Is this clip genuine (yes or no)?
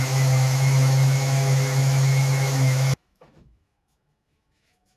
no